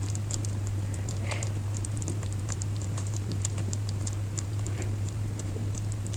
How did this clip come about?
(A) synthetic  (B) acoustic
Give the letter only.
A